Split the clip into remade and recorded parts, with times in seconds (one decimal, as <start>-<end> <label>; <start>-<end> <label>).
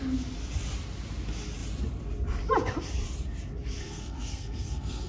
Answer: 0.0-3.8 recorded; 3.8-5.1 remade